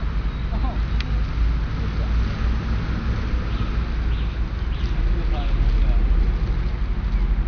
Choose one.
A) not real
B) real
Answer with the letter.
B